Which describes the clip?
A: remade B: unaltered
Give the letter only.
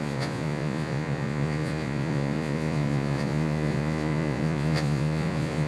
A